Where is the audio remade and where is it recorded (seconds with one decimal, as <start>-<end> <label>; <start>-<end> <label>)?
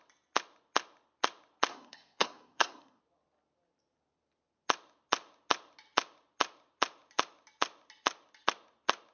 0.0-1.7 recorded; 1.7-3.0 remade; 3.0-9.1 recorded